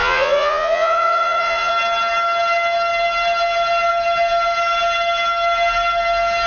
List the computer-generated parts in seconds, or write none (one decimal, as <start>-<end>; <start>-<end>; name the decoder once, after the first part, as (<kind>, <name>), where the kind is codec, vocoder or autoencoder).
0.0-1.7 (vocoder, Vocos)